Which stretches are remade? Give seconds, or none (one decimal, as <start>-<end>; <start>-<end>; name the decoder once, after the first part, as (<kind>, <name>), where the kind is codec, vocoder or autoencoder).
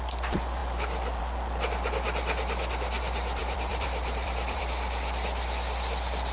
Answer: 3.4-4.6 (vocoder, BigVGAN v2)